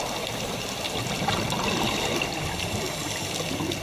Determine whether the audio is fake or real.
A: real